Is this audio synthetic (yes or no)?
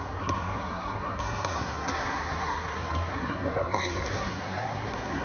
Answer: yes